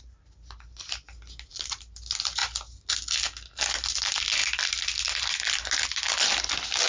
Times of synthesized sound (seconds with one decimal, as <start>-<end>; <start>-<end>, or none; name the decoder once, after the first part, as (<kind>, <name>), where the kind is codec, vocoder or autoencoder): none